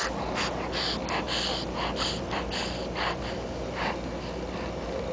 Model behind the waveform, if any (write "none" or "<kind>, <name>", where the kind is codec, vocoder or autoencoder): none